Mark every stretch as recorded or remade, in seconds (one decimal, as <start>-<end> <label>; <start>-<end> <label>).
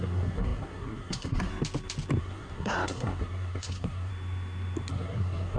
0.0-1.5 remade; 1.5-2.2 recorded; 2.2-4.1 remade; 4.1-4.9 recorded; 4.9-5.6 remade